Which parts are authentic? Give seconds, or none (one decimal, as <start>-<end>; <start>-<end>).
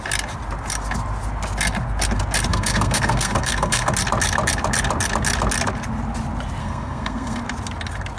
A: 0.0-2.5; 3.9-6.6; 7.4-8.2